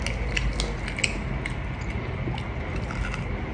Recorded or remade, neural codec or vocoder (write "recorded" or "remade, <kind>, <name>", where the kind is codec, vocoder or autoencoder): recorded